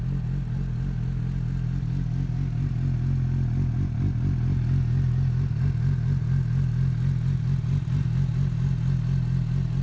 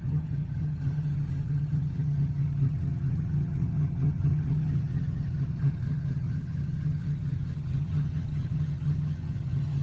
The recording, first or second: first